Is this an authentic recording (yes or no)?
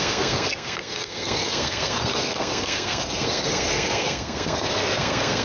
no